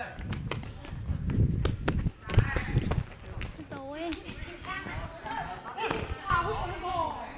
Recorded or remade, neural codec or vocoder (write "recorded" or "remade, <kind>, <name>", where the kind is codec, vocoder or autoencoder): recorded